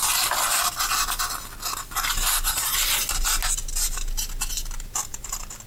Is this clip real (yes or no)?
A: yes